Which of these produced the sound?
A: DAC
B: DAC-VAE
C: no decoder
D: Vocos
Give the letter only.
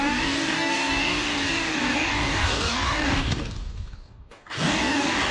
A